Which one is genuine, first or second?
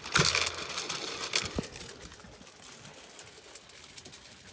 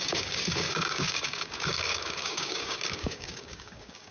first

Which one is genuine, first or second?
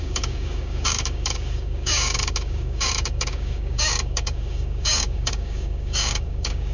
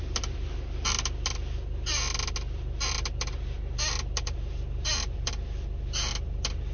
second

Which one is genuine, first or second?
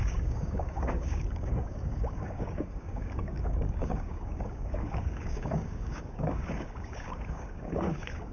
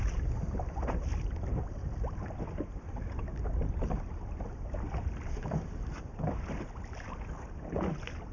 second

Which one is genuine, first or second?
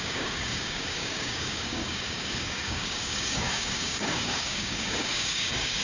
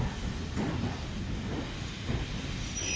second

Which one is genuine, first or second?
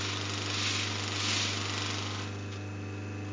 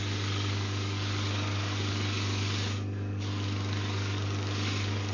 first